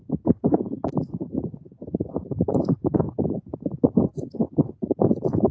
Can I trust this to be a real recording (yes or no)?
yes